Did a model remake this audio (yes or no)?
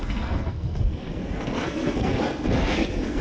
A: yes